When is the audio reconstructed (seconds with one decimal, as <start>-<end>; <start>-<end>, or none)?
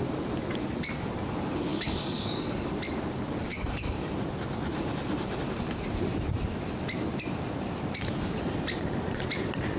1.7-2.7; 3.5-4.1